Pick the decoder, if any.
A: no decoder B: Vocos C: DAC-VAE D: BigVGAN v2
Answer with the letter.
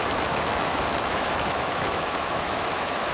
C